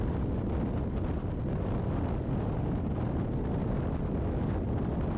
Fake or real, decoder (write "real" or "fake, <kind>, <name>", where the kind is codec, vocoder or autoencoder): real